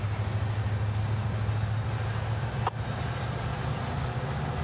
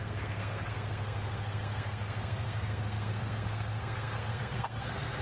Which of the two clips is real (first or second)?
first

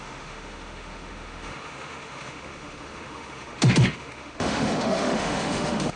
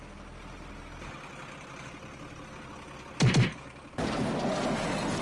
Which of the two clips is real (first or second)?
second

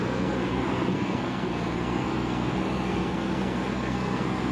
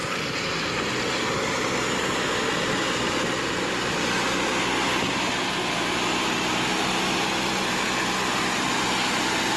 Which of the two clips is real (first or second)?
second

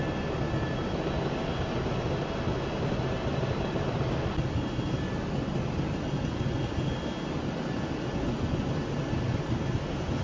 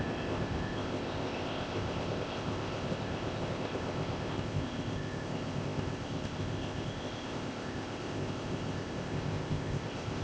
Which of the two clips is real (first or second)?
first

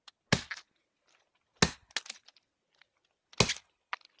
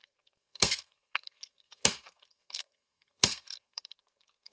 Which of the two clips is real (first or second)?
first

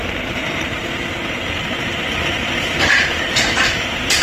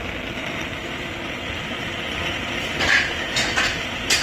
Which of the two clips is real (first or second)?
second